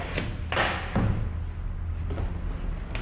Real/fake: real